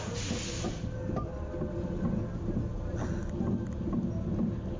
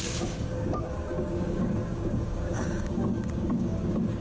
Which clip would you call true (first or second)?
first